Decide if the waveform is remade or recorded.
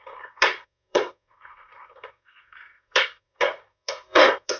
remade